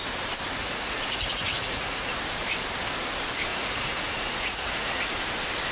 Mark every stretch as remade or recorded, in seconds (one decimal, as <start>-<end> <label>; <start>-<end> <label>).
0.0-0.6 recorded; 0.6-2.1 remade; 2.1-3.5 recorded; 3.5-5.0 remade; 5.0-5.7 recorded